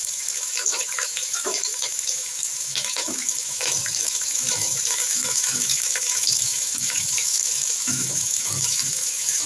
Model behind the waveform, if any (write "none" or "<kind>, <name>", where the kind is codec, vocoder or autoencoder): autoencoder, DAC-VAE